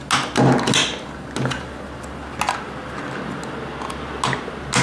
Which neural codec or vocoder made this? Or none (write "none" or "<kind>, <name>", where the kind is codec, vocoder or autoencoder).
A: none